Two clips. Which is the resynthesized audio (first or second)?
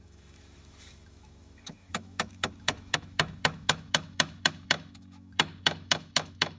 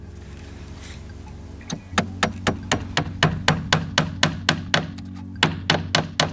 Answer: first